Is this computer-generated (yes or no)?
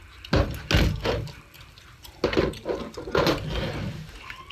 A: no